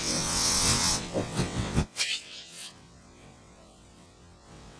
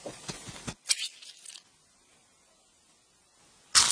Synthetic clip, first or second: first